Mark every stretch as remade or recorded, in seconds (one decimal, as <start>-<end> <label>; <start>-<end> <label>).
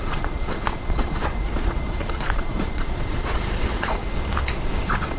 0.0-4.0 remade; 4.0-4.8 recorded; 4.8-5.2 remade